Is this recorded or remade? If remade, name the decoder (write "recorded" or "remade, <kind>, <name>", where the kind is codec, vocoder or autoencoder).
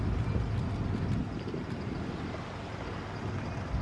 recorded